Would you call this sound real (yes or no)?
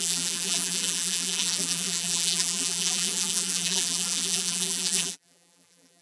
no